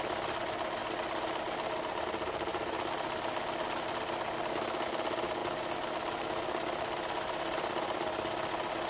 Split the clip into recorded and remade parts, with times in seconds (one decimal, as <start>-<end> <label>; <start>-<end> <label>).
0.0-8.9 recorded